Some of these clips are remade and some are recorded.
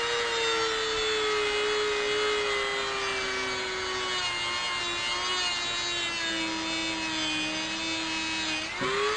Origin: recorded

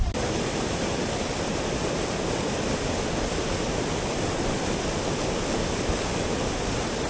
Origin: recorded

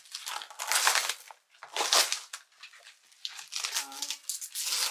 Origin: recorded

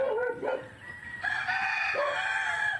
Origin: recorded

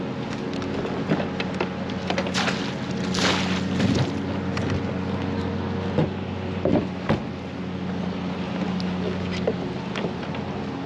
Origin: recorded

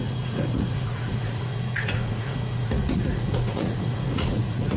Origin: remade